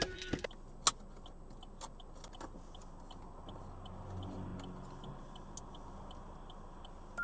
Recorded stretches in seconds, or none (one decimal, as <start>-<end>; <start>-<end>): 0.0-7.2